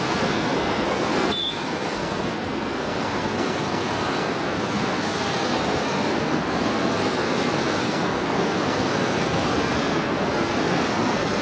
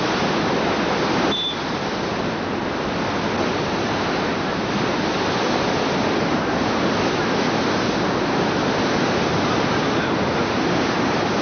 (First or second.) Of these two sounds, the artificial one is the first